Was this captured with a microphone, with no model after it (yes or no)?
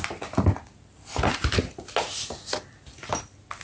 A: yes